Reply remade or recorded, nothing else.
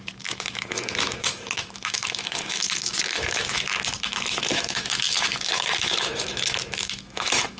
remade